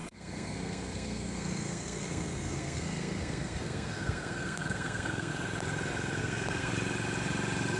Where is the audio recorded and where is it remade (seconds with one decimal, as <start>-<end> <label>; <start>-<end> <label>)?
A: 0.0-5.3 remade; 5.3-6.2 recorded; 6.2-6.7 remade; 6.7-7.8 recorded